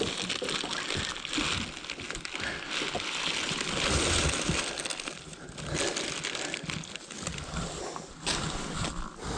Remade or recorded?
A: recorded